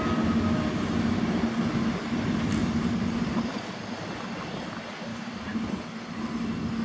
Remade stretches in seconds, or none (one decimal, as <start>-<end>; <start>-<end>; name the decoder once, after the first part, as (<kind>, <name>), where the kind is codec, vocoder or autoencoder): 5.1-5.8 (vocoder, BigVGAN v2)